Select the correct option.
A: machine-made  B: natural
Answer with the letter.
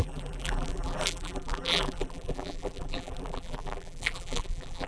A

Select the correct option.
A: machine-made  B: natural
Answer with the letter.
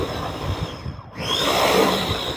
A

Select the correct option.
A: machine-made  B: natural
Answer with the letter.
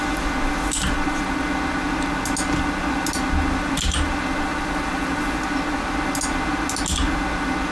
B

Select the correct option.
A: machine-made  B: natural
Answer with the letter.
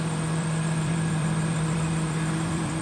A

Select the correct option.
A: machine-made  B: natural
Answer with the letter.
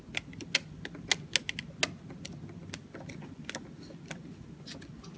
B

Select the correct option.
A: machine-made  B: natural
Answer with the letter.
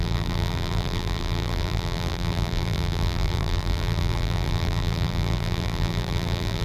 A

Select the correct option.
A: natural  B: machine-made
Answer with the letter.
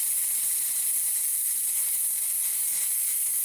A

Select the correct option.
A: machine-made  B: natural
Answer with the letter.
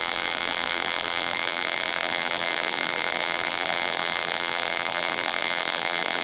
A